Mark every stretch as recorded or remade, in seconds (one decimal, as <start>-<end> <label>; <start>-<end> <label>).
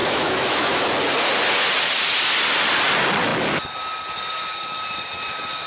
0.0-0.9 remade; 0.9-5.7 recorded